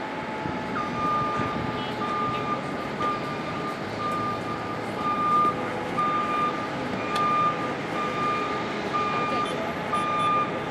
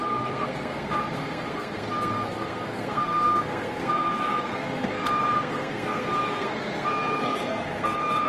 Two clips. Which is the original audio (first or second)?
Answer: first